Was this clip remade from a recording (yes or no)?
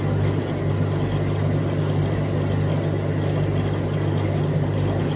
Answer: no